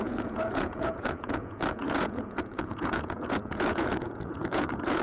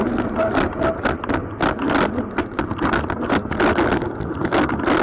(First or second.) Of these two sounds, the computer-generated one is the first